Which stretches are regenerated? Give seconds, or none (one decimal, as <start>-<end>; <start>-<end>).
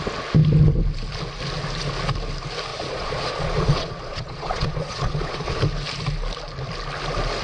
2.7-5.6